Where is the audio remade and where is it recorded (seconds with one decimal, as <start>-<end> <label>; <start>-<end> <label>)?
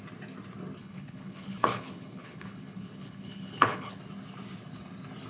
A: 0.0-0.8 recorded; 0.8-4.0 remade; 4.0-5.3 recorded